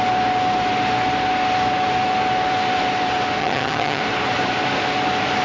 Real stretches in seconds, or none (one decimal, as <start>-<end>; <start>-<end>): 0.0-3.4; 4.0-5.4